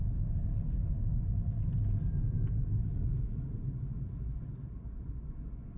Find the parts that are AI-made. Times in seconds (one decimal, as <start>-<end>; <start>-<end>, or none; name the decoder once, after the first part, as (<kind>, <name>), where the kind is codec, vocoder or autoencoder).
0.4-2.2 (vocoder, BigVGAN v2)